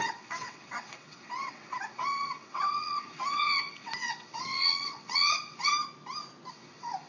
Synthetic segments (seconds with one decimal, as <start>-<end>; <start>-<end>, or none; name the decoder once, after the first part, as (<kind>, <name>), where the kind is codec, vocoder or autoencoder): 0.0-5.7 (vocoder, WaveNeXt); 6.5-7.1